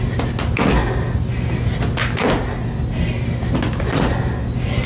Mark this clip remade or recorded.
recorded